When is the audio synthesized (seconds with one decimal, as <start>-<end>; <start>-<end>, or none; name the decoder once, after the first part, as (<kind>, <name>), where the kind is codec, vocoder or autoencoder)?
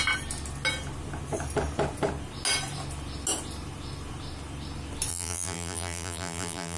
5.1-6.8 (vocoder, BigVGAN v2)